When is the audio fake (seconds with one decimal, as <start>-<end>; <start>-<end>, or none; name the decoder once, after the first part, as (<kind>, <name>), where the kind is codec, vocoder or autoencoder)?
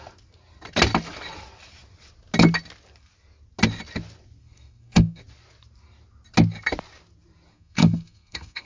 4.4-5.2 (codec, SNAC); 7.5-8.7